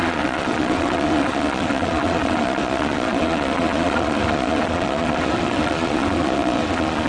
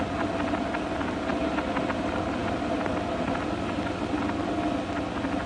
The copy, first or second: first